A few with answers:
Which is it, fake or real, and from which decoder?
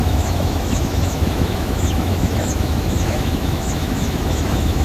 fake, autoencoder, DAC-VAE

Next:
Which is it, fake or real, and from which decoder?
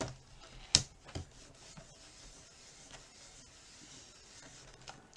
real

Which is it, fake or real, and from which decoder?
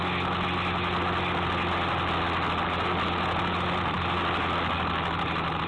real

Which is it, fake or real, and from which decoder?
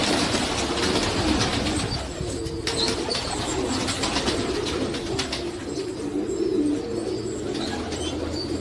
real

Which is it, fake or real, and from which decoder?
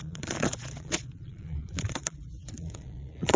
fake, vocoder, Vocos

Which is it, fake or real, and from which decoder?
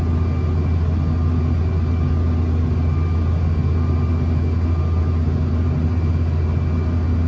real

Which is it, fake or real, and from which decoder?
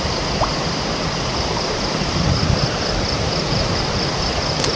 real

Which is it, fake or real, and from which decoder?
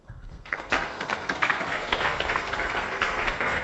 fake, codec, SNAC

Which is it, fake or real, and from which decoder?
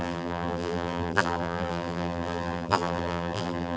fake, vocoder, BigVGAN v2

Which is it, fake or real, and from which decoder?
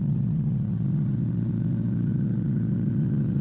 fake, vocoder, Vocos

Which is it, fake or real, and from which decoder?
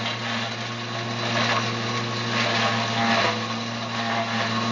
real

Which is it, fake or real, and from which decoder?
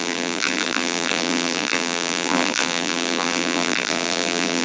fake, vocoder, BigVGAN v2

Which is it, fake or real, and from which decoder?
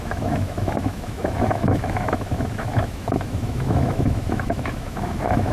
fake, autoencoder, DAC-VAE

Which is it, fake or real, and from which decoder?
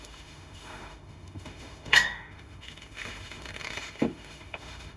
fake, autoencoder, DAC-VAE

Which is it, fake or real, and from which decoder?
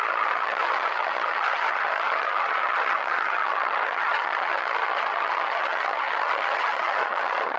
fake, vocoder, HiFi-GAN